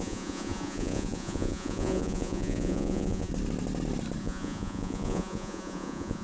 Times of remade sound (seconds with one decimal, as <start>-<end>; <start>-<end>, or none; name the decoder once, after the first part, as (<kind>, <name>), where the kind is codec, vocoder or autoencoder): 0.0-3.3 (vocoder, Vocos); 4.2-6.2